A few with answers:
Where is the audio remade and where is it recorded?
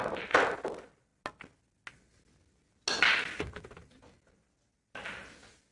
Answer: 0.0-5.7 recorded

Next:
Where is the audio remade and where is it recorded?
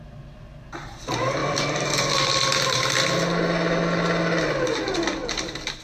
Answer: 0.0-1.4 recorded; 1.4-3.2 remade; 3.2-5.8 recorded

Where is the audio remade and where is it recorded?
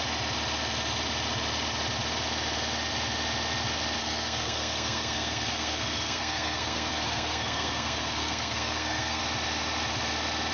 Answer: 0.0-4.0 recorded; 4.0-9.2 remade; 9.2-10.5 recorded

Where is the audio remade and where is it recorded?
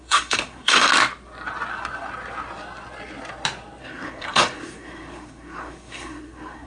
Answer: 0.0-0.9 remade; 0.9-3.8 recorded; 3.8-6.7 remade